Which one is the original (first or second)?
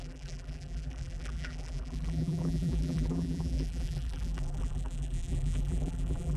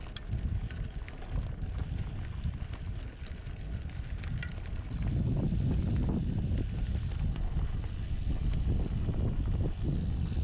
second